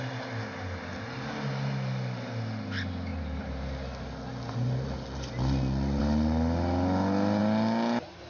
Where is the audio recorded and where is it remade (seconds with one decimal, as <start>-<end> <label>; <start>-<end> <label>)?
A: 0.0-8.3 recorded

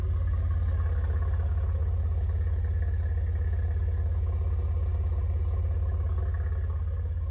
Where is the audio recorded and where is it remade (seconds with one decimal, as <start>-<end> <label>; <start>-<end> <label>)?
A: 0.0-7.3 recorded